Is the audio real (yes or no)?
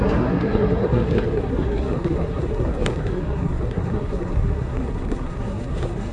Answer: no